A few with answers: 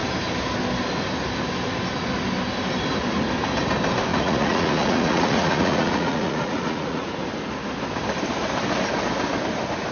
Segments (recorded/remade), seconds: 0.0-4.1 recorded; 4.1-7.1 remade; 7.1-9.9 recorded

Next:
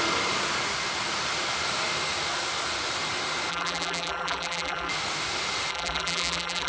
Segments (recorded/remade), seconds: 0.0-3.5 recorded; 3.5-4.9 remade; 4.9-5.7 recorded; 5.7-6.7 remade

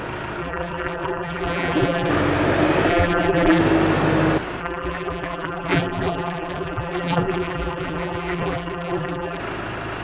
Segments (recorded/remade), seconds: 0.0-0.4 recorded; 0.4-2.1 remade; 2.1-2.9 recorded; 2.9-3.6 remade; 3.6-4.6 recorded; 4.6-9.4 remade; 9.4-10.0 recorded

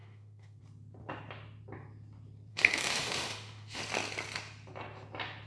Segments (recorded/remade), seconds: 0.0-0.6 remade; 0.6-2.5 recorded; 2.5-3.8 remade; 3.8-5.5 recorded

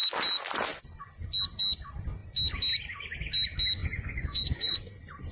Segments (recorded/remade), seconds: 0.0-3.8 recorded; 3.8-4.8 remade; 4.8-5.3 recorded

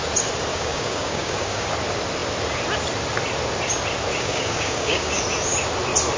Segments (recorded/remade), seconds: 0.0-0.5 recorded; 0.5-1.7 remade; 1.7-4.1 recorded; 4.1-5.2 remade; 5.2-6.2 recorded

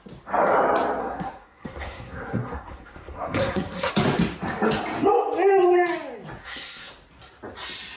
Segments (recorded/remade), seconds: 0.0-1.0 recorded; 1.0-3.9 remade; 3.9-6.4 recorded; 6.4-6.9 remade; 6.9-8.0 recorded

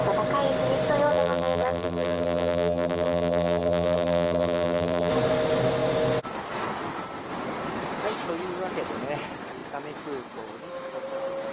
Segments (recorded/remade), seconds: 0.0-1.1 recorded; 1.1-5.1 remade; 5.1-11.5 recorded